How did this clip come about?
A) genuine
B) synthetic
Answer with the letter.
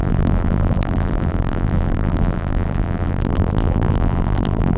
B